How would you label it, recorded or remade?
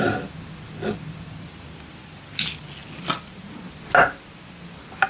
recorded